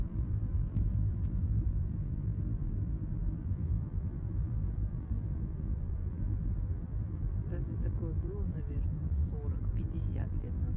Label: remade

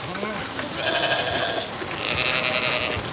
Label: recorded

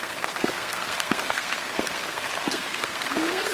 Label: remade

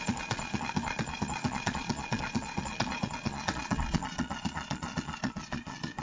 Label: remade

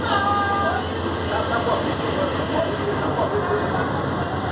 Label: recorded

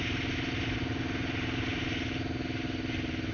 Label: recorded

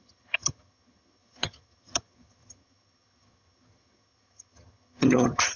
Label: remade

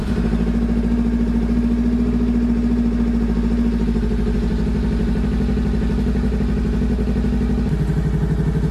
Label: recorded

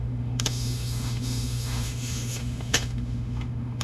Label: remade